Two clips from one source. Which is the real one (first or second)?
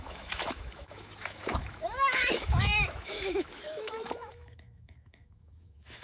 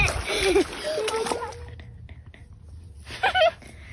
second